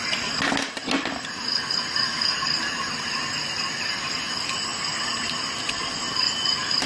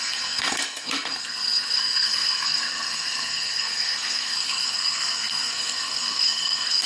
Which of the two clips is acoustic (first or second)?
first